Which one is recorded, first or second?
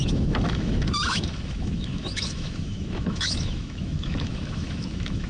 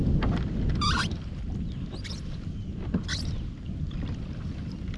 second